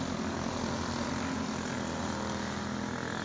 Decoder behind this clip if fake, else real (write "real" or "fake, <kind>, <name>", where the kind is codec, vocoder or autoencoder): real